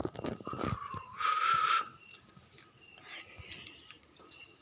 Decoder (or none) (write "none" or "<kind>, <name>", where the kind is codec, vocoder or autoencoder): none